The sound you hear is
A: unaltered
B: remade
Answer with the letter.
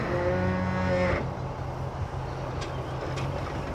A